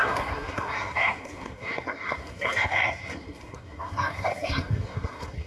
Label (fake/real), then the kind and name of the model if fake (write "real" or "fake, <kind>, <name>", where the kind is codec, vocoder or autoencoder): fake, codec, SNAC